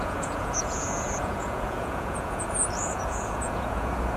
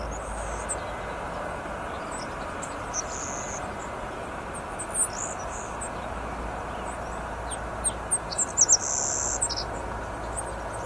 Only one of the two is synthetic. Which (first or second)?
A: first